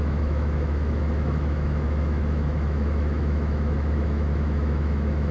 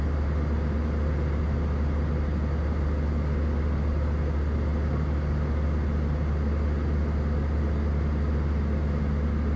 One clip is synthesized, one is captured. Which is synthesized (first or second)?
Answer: first